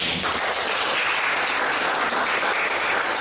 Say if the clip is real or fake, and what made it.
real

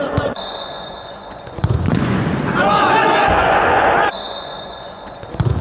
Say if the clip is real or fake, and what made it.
fake, vocoder, Vocos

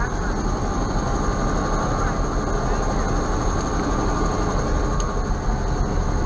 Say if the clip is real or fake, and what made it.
real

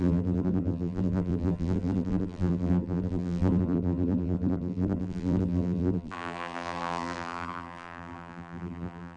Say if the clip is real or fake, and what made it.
fake, vocoder, BigVGAN v2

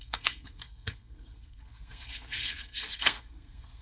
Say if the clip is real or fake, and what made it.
fake, codec, SNAC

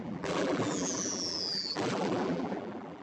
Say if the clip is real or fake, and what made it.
fake, vocoder, BigVGAN v2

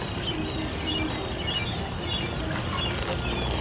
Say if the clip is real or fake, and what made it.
real